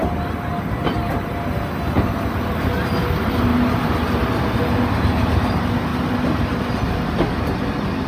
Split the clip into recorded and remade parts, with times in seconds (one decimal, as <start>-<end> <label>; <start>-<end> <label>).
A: 0.0-8.1 recorded

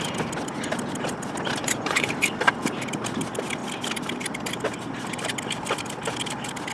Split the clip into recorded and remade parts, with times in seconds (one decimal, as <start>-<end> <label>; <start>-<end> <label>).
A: 0.0-1.6 recorded; 1.6-2.1 remade; 2.1-6.7 recorded

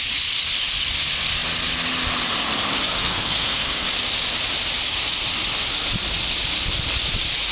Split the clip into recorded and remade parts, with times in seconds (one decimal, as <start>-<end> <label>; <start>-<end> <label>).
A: 0.0-3.0 recorded; 3.0-3.9 remade; 3.9-7.5 recorded